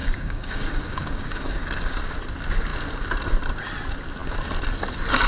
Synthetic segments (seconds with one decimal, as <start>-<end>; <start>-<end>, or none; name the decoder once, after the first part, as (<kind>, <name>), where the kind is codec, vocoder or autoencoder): 0.0-2.0 (codec, DAC)